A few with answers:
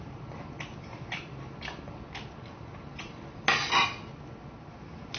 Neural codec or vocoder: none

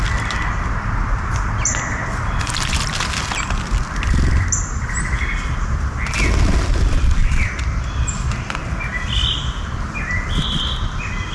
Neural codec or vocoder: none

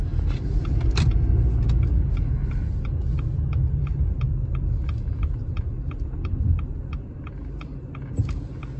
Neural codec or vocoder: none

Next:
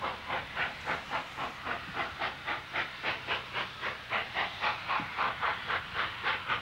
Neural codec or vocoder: none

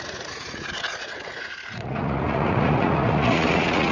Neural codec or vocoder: vocoder, Vocos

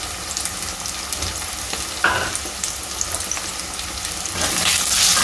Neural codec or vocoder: none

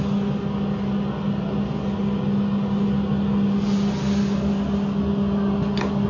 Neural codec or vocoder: none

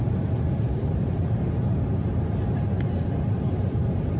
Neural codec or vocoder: vocoder, BigVGAN v2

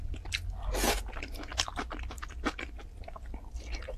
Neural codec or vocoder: none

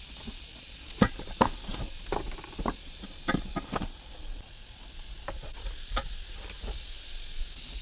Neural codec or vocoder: none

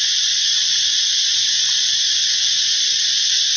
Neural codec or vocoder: none